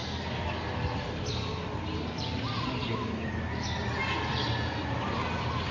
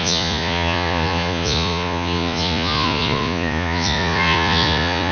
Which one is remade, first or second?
second